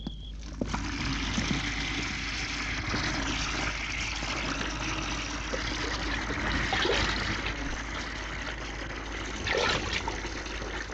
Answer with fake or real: real